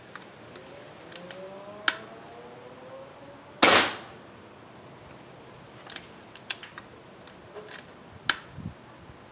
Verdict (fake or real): real